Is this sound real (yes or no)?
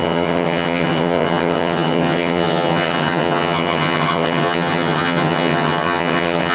no